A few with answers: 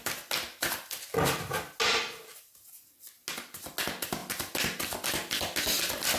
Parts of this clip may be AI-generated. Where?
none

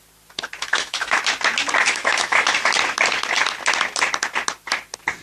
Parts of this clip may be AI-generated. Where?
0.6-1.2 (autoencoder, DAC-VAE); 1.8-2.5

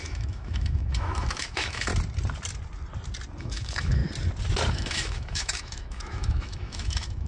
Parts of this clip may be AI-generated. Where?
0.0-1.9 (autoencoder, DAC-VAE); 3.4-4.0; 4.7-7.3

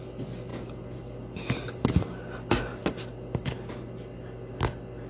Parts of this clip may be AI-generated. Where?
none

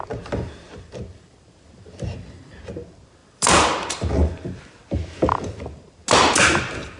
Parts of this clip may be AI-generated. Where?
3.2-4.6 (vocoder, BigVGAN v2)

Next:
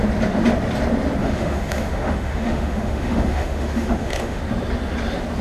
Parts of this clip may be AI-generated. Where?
1.2-4.4 (autoencoder, DAC-VAE)

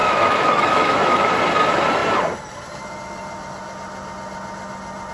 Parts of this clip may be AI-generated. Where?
0.0-1.3 (autoencoder, DAC-VAE)

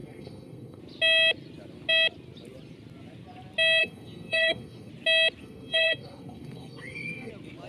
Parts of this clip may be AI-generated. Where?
0.0-0.8 (codec, SNAC); 3.8-4.9; 5.4-7.3